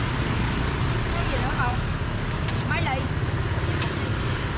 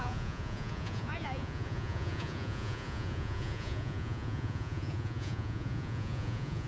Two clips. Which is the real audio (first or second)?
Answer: first